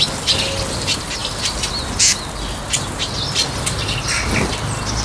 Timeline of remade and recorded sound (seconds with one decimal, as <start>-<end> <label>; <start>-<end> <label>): 0.0-5.0 recorded